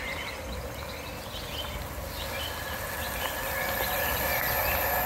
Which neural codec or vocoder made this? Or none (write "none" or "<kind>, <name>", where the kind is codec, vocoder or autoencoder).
none